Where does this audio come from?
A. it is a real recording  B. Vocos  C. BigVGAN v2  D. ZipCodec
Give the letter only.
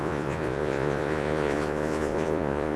B